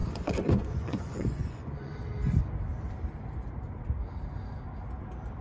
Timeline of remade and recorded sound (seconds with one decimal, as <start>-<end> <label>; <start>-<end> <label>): 0.0-1.9 remade; 1.9-5.4 recorded